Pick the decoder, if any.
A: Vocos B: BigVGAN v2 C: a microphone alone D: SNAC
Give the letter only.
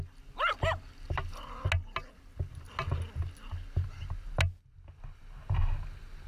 C